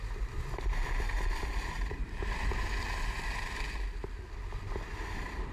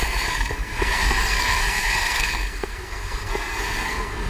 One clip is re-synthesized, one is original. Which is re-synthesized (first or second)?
second